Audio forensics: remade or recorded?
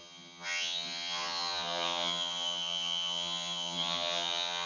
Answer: remade